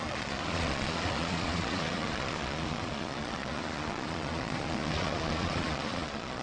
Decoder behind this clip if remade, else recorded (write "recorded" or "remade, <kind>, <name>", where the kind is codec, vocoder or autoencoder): remade, vocoder, Vocos